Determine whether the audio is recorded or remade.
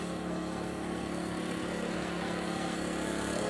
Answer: remade